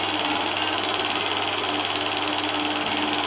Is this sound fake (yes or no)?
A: no